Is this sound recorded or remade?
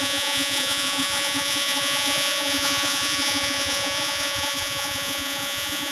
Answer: remade